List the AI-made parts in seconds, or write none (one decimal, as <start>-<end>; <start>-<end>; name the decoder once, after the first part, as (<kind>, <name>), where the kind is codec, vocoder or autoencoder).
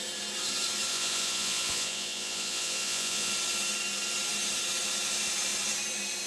0.9-3.3 (vocoder, Vocos)